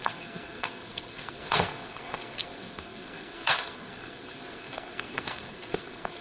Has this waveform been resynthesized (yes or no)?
yes